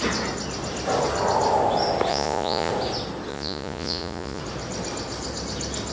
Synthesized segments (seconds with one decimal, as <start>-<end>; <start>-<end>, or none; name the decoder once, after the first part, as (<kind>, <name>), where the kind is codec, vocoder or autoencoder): 2.1-2.7 (vocoder, Vocos); 3.3-4.4